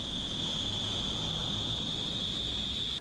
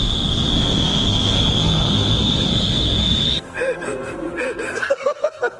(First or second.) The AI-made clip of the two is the second